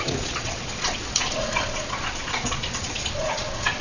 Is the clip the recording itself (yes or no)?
no